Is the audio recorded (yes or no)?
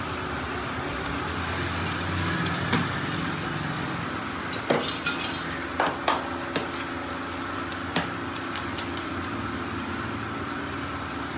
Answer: yes